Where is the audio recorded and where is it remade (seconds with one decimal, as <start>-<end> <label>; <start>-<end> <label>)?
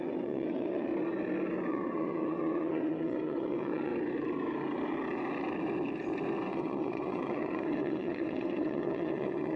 0.0-0.9 remade; 0.9-1.7 recorded; 1.7-3.9 remade; 3.9-6.5 recorded; 6.5-9.6 remade